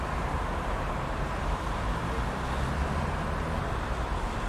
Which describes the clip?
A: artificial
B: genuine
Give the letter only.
B